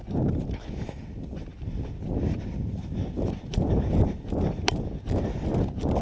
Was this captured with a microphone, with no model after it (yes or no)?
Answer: yes